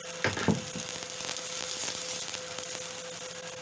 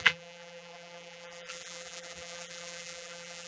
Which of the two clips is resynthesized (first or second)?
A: second